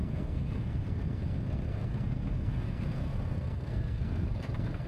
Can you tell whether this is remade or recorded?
remade